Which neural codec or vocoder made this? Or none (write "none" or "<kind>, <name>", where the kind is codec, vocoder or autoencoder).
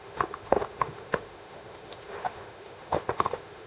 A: autoencoder, DAC-VAE